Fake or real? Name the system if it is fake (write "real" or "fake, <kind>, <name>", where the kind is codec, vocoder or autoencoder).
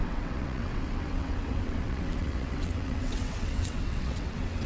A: fake, vocoder, WaveNeXt